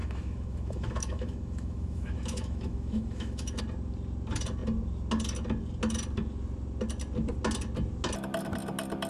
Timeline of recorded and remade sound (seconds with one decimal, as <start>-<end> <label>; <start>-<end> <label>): 0.0-3.6 remade; 3.6-9.1 recorded